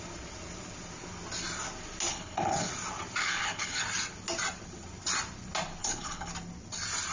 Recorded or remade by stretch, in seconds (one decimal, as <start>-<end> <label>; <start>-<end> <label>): 0.0-2.1 recorded; 2.1-2.7 remade; 2.7-3.2 recorded; 3.2-3.8 remade; 3.8-5.8 recorded; 5.8-6.3 remade; 6.3-7.1 recorded